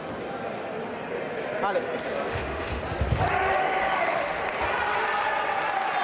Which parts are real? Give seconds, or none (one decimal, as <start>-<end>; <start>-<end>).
0.0-2.3; 2.8-3.6; 4.4-6.0